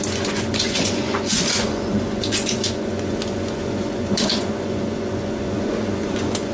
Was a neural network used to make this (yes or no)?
yes